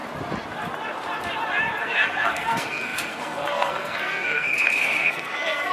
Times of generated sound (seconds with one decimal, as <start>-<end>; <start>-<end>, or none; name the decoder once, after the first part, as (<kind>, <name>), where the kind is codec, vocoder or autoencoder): 1.8-5.7 (codec, SNAC)